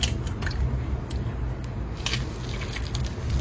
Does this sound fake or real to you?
real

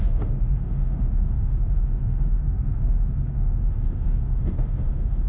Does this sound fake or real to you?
fake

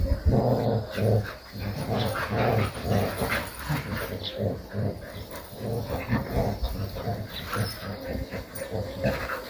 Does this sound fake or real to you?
fake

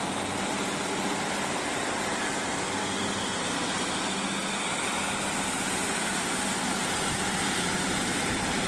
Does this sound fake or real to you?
real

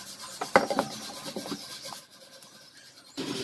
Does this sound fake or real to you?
fake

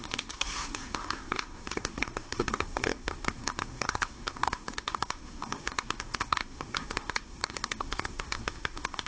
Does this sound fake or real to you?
fake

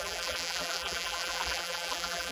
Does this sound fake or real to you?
fake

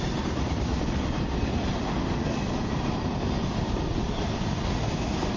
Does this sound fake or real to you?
real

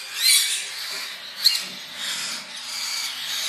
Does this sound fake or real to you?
real